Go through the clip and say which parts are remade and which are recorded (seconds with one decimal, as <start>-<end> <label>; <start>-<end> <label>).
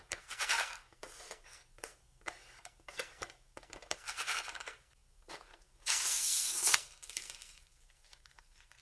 0.0-8.8 remade